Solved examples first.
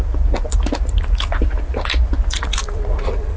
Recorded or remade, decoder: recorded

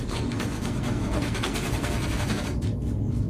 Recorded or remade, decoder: remade, codec, SNAC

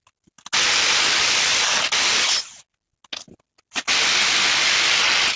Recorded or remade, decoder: recorded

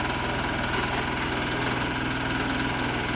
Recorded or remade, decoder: recorded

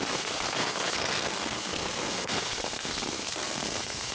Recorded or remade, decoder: remade, codec, SNAC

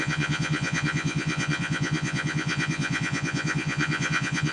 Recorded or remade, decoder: remade, vocoder, Vocos